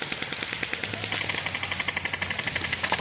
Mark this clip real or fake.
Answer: real